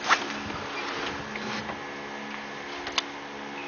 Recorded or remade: recorded